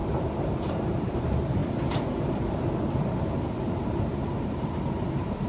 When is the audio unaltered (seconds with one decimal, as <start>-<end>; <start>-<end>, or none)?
1.6-4.0